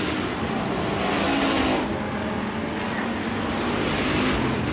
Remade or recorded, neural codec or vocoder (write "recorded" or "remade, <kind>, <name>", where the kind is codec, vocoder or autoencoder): recorded